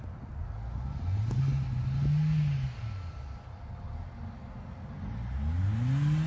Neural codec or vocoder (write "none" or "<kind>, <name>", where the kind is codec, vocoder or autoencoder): none